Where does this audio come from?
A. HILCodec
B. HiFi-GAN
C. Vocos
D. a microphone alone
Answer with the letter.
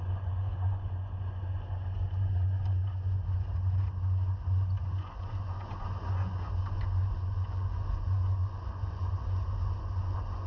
C